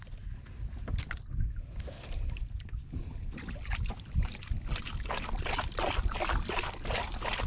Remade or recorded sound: recorded